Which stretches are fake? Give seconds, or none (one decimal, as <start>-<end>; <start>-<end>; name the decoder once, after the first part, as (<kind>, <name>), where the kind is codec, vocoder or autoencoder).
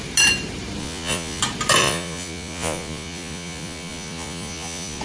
0.8-1.4 (vocoder, Vocos); 1.8-5.0